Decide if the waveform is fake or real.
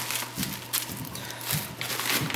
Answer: real